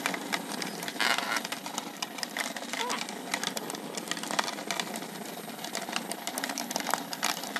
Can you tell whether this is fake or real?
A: real